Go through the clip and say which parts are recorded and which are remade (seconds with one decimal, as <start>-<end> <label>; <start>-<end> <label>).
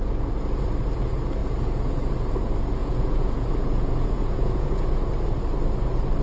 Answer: 0.0-1.4 recorded; 1.4-2.1 remade; 2.1-2.8 recorded; 2.8-5.0 remade; 5.0-6.2 recorded